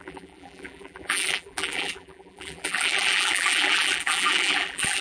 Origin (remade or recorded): remade